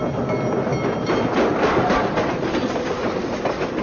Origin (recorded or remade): recorded